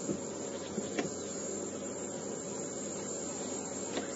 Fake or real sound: real